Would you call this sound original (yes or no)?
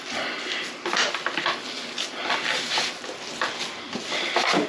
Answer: yes